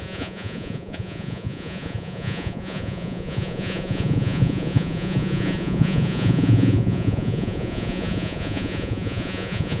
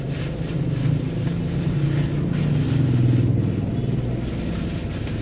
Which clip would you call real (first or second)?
second